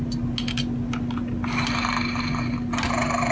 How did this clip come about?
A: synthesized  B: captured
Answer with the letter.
B